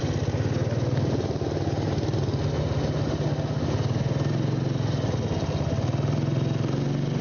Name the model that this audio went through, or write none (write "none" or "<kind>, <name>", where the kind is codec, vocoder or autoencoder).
none